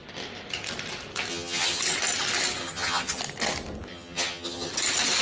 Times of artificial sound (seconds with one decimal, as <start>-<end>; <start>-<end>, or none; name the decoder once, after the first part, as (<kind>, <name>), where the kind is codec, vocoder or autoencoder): 1.3-1.8 (vocoder, HiFi-GAN); 2.6-3.2; 3.9-4.7